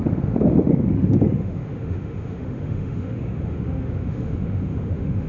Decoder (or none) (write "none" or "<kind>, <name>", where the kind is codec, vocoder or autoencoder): autoencoder, DAC-VAE